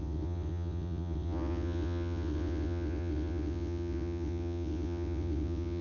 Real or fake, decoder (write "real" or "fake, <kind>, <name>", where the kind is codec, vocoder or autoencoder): fake, vocoder, WaveNeXt